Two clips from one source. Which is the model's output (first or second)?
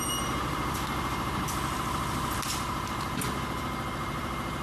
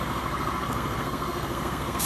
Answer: second